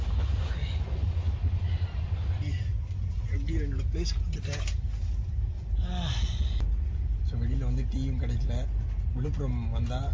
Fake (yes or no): no